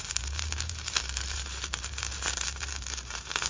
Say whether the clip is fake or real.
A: fake